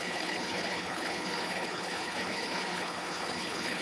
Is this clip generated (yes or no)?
yes